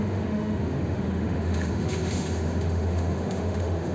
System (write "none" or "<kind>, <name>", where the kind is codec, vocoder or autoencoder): autoencoder, DAC-VAE